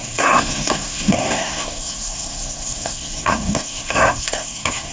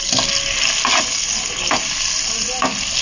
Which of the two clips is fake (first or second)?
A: first